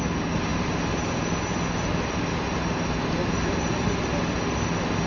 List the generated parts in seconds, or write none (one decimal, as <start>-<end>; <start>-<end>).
none